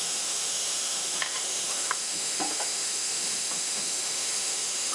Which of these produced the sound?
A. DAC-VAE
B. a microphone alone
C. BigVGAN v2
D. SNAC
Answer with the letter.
A